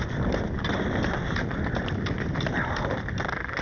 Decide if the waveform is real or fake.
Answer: real